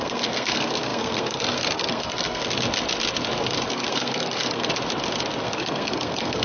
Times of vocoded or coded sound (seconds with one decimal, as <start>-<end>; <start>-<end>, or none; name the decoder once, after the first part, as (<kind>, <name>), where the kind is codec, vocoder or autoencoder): 0.0-2.4 (codec, SNAC); 3.7-4.7; 5.4-6.4